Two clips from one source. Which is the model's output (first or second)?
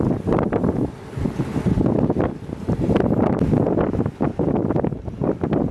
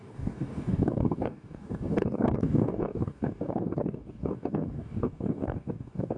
second